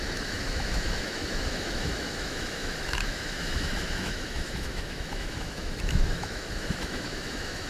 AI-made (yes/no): yes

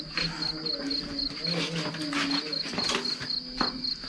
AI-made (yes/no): no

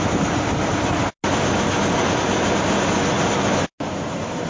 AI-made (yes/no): no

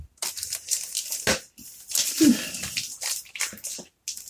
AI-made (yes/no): no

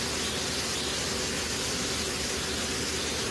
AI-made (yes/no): no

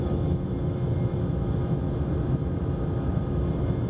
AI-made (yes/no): yes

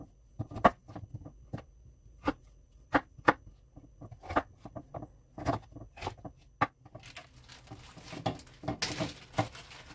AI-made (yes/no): no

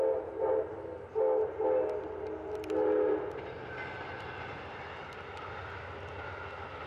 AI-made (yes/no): no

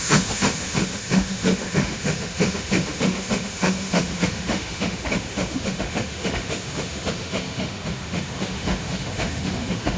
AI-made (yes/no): yes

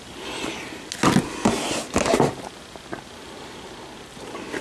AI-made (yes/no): no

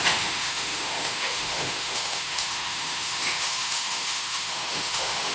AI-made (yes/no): yes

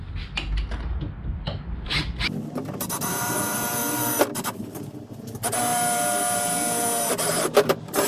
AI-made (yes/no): no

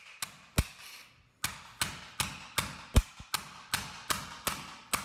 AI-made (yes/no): no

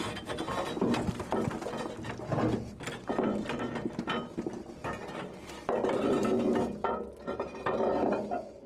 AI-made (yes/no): no